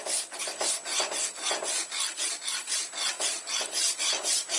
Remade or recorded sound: recorded